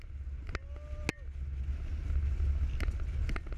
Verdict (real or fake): real